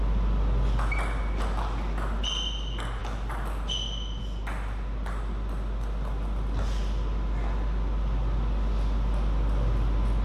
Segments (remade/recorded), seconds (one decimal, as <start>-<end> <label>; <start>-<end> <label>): 0.0-10.2 recorded